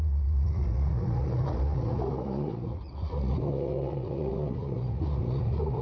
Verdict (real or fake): fake